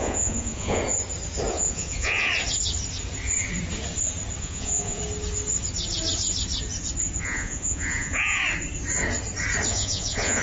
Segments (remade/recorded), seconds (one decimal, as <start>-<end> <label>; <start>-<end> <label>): 0.0-0.8 remade; 0.8-1.5 recorded; 1.5-2.3 remade; 2.3-4.4 recorded; 4.4-5.0 remade; 5.0-7.2 recorded; 7.2-8.4 remade; 8.4-9.7 recorded; 9.7-10.4 remade